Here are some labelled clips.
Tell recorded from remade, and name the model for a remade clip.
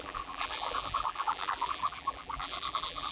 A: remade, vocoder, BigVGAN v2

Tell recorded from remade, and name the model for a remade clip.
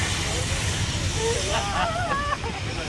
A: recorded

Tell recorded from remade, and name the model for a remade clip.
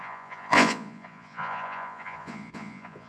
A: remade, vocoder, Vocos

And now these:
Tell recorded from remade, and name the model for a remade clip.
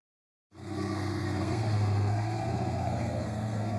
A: remade, codec, SNAC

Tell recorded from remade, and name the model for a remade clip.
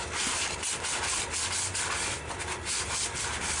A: recorded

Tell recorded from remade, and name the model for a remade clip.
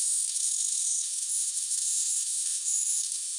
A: remade, autoencoder, DAC-VAE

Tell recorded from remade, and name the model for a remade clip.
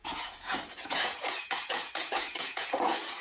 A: remade, vocoder, Vocos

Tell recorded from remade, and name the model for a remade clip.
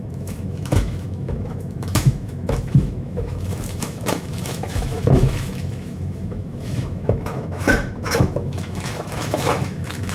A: remade, autoencoder, DAC-VAE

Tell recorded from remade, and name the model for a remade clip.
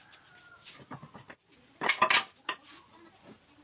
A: recorded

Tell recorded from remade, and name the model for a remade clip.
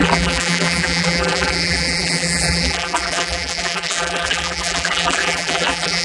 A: remade, vocoder, BigVGAN v2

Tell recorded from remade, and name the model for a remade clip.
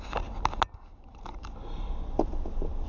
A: recorded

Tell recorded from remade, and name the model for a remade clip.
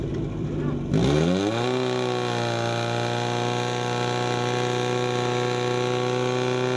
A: recorded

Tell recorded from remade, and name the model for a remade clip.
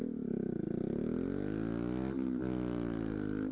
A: recorded